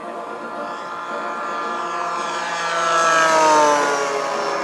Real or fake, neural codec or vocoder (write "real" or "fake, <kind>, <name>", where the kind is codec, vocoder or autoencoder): real